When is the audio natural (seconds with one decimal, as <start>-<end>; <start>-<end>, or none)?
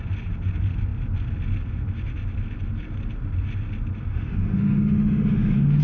0.0-4.1